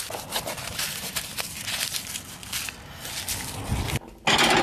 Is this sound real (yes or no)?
yes